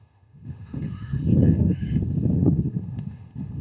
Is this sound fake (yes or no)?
yes